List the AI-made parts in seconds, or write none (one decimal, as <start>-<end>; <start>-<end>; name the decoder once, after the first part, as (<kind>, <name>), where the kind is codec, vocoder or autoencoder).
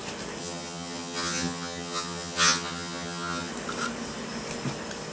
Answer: 0.4-3.5 (vocoder, HiFi-GAN)